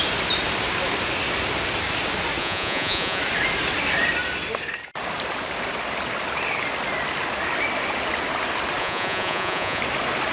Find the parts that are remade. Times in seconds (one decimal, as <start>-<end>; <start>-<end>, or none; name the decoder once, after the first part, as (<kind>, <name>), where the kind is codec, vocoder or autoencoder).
2.4-3.2 (vocoder, Vocos); 8.8-9.8